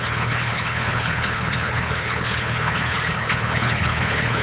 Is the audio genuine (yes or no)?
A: no